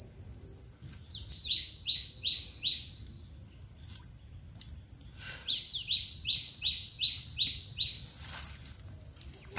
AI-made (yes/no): no